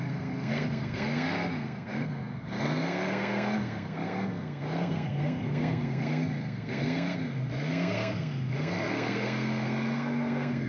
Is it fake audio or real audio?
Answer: fake